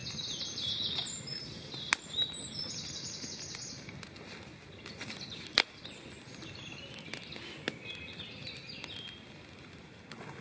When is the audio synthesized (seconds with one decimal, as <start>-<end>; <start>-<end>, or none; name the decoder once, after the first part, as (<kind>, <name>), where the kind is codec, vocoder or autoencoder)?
none